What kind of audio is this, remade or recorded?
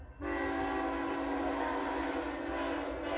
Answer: recorded